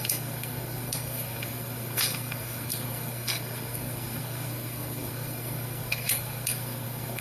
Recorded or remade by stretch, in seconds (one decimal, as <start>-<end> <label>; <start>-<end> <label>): 0.0-7.2 remade